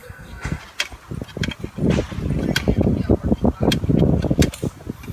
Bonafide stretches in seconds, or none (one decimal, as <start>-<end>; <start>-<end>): 0.6-5.1